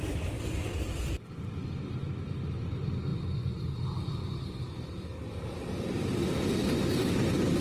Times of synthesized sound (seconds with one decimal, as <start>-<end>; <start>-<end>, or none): none